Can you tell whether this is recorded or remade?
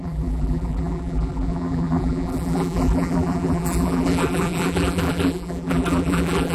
remade